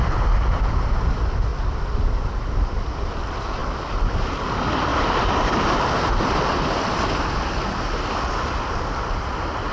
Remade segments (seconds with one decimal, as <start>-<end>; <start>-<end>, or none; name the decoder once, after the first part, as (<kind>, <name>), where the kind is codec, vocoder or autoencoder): 1.5-3.1 (vocoder, BigVGAN v2)